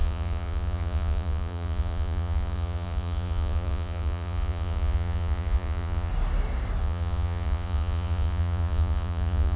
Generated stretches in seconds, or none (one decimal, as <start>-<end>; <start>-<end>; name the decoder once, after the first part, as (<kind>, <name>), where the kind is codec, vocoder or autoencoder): 0.0-6.1 (vocoder, Vocos); 6.8-9.6